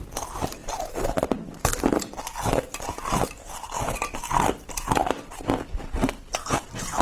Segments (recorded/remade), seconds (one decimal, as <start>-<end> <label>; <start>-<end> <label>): 0.0-7.0 recorded